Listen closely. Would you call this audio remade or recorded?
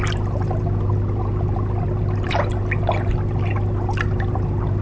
recorded